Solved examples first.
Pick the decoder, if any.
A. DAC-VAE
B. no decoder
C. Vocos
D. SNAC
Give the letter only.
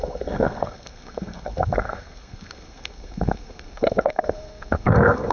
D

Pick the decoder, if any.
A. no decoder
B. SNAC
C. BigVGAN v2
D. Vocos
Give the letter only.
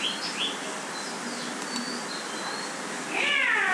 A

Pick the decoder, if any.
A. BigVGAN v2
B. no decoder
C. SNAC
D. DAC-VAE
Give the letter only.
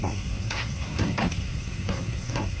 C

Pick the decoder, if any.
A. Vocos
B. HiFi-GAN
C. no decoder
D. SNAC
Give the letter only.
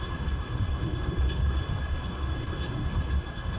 D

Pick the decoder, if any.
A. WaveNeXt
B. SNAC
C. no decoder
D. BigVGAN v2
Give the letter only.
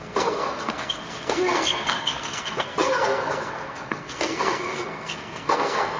B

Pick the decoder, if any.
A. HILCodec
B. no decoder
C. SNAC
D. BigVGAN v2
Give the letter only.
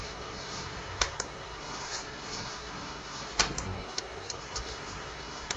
C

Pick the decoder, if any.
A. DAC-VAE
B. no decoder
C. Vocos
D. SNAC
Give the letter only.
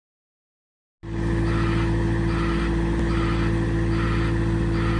B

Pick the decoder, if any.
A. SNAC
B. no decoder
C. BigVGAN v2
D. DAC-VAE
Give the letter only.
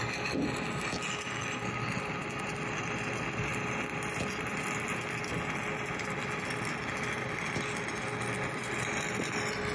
B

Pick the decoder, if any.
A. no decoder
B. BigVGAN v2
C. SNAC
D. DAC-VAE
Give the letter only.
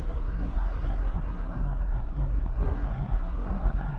C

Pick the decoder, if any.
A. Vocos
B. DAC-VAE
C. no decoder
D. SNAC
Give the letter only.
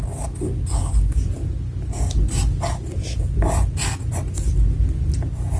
C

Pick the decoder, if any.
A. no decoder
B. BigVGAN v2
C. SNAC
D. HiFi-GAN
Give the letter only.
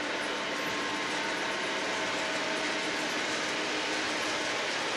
A